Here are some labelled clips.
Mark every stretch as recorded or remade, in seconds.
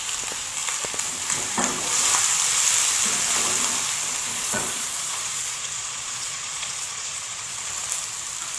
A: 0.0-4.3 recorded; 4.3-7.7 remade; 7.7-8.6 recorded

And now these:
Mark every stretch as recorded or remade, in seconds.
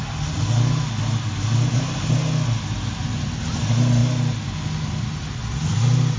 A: 0.0-6.2 recorded